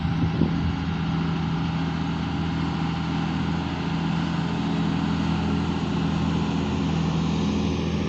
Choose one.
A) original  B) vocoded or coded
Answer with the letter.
A